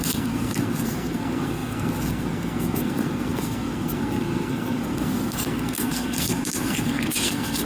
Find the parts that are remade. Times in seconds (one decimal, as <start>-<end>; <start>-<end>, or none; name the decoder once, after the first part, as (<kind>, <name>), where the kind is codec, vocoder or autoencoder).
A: 0.0-7.7 (codec, SNAC)